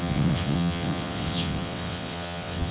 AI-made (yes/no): yes